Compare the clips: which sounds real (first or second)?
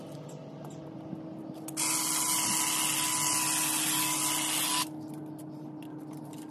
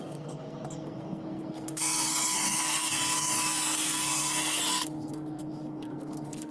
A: first